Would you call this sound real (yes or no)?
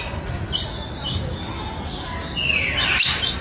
yes